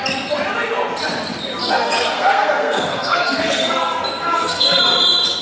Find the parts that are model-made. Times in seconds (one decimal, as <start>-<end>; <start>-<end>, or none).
1.6-4.8